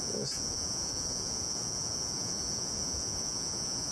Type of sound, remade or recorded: remade